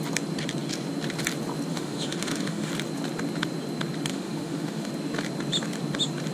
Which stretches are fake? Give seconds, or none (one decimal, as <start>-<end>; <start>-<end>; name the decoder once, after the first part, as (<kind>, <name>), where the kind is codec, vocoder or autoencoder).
1.7-2.7 (autoencoder, DAC-VAE); 4.1-4.9